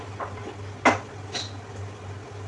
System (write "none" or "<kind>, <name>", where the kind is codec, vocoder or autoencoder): none